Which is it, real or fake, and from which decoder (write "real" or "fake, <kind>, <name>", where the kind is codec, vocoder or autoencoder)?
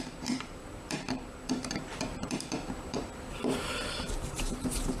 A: fake, vocoder, BigVGAN v2